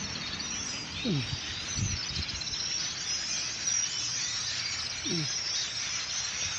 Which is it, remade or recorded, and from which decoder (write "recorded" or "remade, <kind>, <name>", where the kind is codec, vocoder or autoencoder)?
recorded